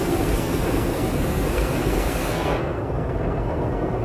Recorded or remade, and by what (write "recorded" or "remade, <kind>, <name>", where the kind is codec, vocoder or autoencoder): remade, codec, SNAC